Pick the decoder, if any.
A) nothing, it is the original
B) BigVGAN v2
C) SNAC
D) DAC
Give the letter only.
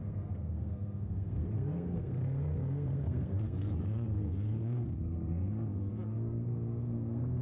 C